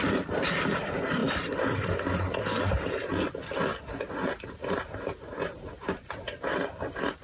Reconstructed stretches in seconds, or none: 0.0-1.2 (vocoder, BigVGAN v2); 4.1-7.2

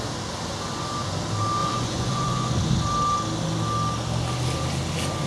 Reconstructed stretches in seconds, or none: 1.6-2.6 (vocoder, Vocos)

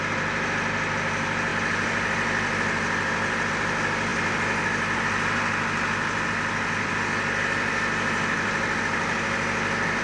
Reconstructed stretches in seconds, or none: none